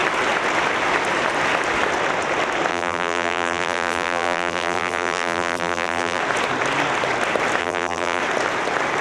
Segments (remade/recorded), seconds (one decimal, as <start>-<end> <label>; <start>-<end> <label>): 0.0-2.7 recorded; 2.7-6.2 remade; 6.2-7.6 recorded; 7.6-8.2 remade; 8.2-9.0 recorded

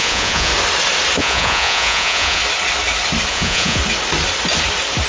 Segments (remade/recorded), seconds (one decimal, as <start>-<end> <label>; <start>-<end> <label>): 0.0-0.5 remade; 0.5-1.2 recorded; 1.2-2.4 remade; 2.4-3.3 recorded; 3.3-3.8 remade; 3.8-5.1 recorded

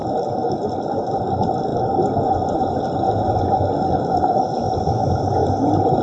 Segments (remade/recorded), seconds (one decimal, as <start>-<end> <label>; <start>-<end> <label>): 0.0-6.0 recorded

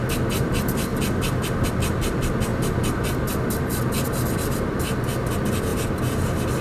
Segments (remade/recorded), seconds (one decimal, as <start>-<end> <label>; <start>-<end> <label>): 0.0-0.9 recorded; 0.9-1.7 remade; 1.7-5.7 recorded; 5.7-6.6 remade